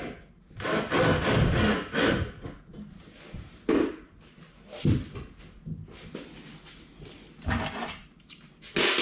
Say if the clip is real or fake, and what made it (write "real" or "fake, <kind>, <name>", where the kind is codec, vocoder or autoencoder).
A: real